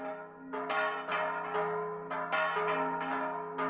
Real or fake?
real